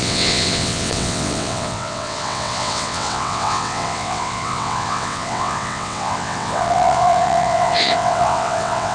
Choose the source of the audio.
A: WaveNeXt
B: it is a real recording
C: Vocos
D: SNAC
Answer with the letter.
A